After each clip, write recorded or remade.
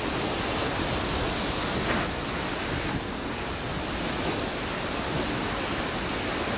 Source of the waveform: recorded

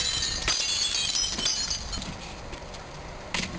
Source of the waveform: recorded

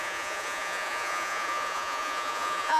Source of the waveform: remade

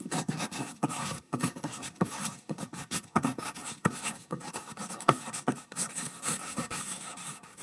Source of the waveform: remade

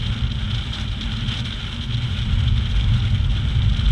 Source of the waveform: recorded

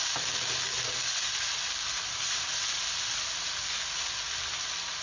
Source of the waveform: recorded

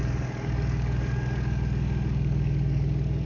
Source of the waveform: remade